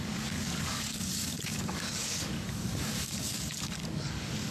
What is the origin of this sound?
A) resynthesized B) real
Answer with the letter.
A